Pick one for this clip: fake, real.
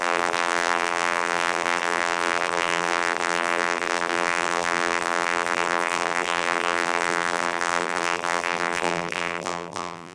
fake